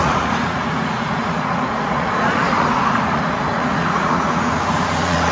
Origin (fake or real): fake